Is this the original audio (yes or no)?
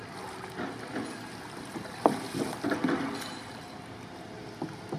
yes